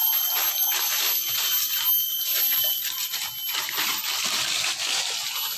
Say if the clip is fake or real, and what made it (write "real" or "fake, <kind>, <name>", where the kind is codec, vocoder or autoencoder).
real